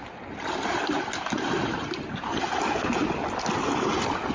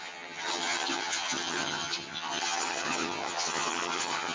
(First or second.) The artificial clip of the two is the second